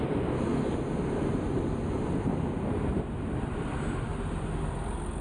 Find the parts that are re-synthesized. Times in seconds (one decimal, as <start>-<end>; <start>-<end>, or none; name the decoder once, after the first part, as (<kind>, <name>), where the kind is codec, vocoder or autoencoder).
0.0-0.5 (vocoder, BigVGAN v2); 1.9-2.3; 3.4-4.1